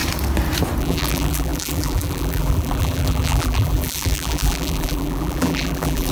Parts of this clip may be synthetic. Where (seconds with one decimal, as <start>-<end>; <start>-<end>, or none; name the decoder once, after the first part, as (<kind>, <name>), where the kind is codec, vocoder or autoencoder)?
0.8-6.1 (vocoder, BigVGAN v2)